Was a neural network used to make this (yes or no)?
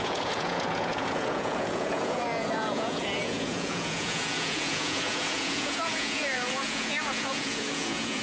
yes